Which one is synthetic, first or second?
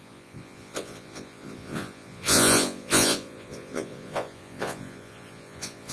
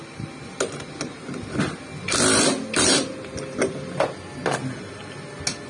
first